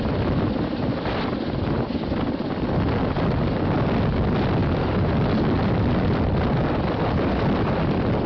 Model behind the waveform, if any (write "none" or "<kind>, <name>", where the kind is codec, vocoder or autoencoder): none